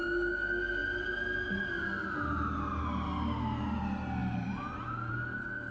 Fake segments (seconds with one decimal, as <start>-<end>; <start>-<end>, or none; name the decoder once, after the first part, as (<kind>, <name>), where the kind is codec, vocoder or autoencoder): none